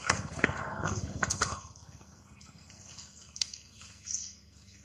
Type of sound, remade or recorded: remade